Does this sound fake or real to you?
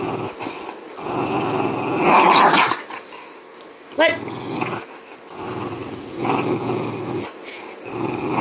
real